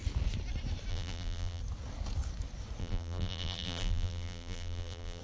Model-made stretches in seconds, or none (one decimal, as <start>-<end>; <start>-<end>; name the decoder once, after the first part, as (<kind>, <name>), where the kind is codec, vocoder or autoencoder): 0.9-1.6 (vocoder, BigVGAN v2); 2.8-5.2